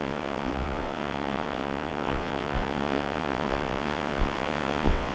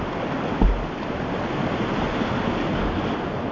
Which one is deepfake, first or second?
first